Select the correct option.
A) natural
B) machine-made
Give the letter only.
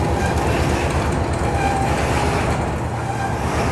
A